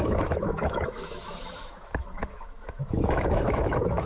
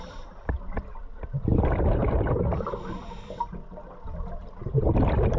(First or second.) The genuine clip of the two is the second